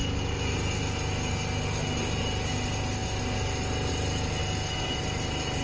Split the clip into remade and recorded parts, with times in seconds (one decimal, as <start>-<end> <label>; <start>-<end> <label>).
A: 0.0-5.6 recorded